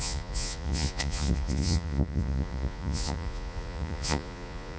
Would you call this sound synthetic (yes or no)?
yes